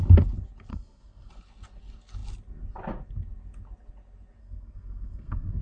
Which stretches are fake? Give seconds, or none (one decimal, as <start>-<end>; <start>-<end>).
0.7-1.3; 4.4-5.6